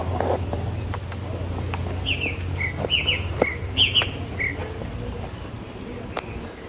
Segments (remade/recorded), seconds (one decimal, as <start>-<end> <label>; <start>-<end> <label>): 0.0-4.6 recorded; 4.6-6.3 remade; 6.3-6.7 recorded